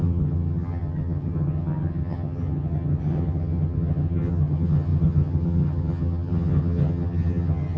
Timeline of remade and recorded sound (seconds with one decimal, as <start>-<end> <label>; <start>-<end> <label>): 0.0-7.8 remade